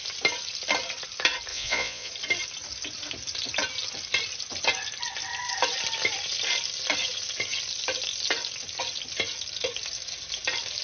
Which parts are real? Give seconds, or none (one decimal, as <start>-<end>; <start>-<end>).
0.0-1.5; 2.1-10.8